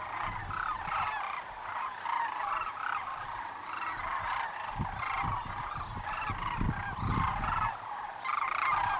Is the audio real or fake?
real